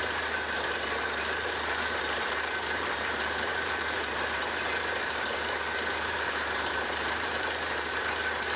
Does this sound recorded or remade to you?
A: remade